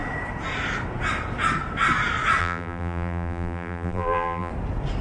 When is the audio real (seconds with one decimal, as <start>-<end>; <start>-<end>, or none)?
0.0-2.4; 4.5-5.0